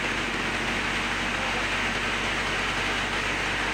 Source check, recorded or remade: recorded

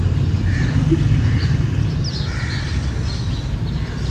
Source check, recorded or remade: recorded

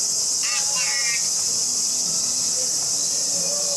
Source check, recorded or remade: recorded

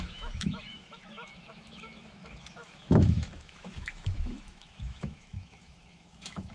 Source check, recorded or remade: remade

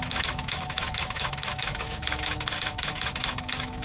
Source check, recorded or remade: remade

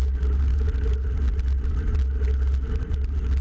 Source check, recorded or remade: recorded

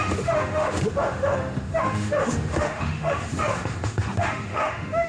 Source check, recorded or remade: remade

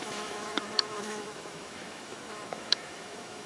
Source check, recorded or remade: remade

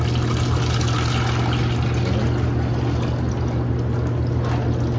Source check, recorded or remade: recorded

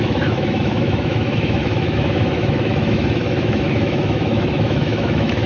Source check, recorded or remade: remade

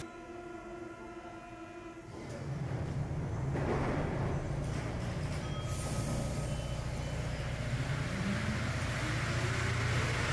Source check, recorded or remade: recorded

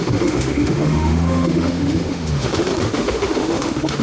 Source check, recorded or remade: remade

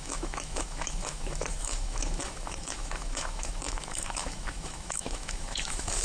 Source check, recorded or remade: remade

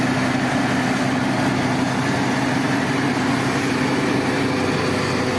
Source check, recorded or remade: recorded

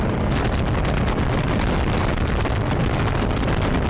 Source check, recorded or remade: recorded